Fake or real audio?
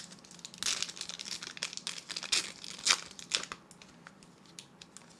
real